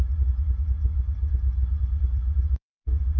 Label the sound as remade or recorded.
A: recorded